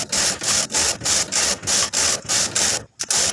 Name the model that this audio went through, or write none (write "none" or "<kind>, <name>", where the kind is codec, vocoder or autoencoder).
none